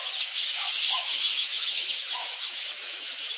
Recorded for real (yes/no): no